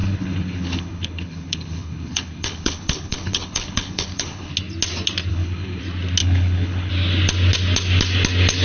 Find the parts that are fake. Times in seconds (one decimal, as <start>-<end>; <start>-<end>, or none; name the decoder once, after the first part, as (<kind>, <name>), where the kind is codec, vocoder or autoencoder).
0.0-4.5 (codec, HILCodec); 5.3-5.8; 6.2-6.9